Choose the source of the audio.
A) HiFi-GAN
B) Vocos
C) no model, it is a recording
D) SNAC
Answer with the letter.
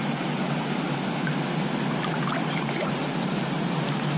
C